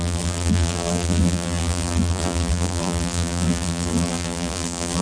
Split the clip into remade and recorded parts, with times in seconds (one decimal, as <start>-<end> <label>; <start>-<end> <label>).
0.0-5.0 remade